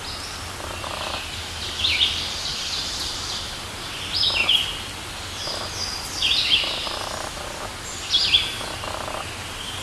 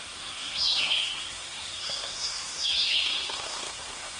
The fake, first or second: second